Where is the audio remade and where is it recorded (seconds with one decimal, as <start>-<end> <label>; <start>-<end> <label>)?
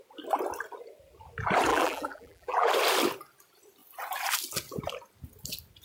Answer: 0.0-1.7 recorded; 1.7-2.7 remade; 2.7-5.8 recorded